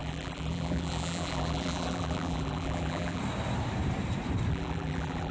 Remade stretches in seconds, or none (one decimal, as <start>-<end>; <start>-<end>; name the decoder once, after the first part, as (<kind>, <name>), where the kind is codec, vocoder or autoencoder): 0.0-3.2 (vocoder, BigVGAN v2); 4.5-5.3